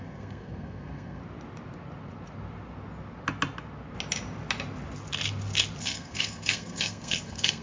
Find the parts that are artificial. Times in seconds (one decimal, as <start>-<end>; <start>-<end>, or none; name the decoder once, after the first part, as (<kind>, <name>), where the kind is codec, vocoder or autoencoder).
0.0-1.2 (codec, SNAC); 5.8-7.6